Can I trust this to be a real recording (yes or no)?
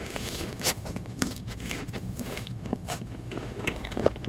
no